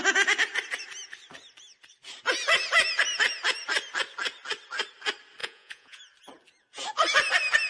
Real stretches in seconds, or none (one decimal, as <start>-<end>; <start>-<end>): 0.0-5.4; 6.0-7.7